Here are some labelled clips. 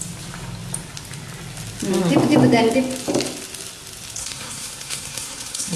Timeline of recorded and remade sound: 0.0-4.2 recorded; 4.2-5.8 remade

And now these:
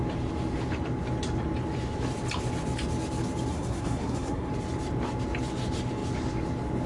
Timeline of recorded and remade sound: 0.0-3.5 recorded; 3.5-4.5 remade; 4.5-6.9 recorded

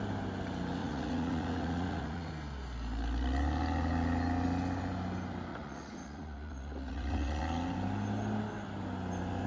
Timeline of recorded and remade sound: 0.0-0.8 recorded; 0.8-2.3 remade; 2.3-5.5 recorded; 5.5-7.4 remade; 7.4-9.5 recorded